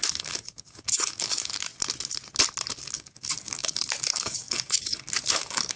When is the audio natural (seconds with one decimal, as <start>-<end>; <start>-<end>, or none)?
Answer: 1.7-2.9